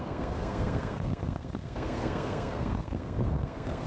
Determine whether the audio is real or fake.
fake